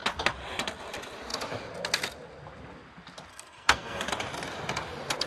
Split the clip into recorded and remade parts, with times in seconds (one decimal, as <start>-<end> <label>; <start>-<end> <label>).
0.0-3.3 recorded; 3.3-4.0 remade; 4.0-5.3 recorded